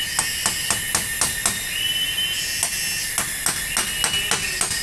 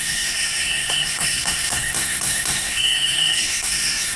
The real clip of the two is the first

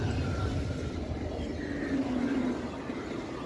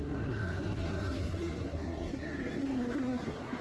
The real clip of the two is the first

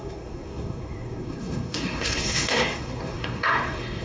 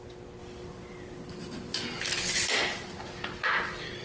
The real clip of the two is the second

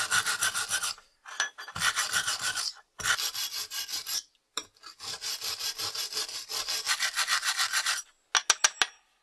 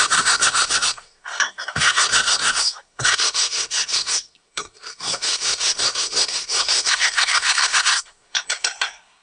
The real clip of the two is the first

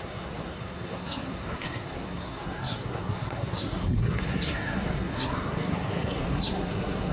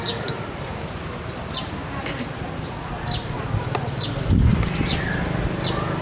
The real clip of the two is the second